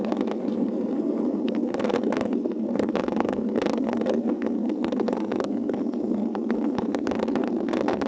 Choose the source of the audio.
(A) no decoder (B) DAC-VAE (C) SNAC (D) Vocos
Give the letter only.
C